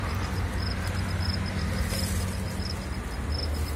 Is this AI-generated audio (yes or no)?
no